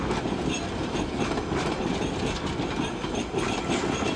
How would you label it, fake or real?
real